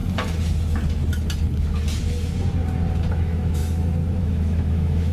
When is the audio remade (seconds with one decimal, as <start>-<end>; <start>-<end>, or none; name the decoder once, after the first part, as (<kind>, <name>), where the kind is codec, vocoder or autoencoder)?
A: 3.1-3.6 (autoencoder, DAC-VAE); 4.2-5.1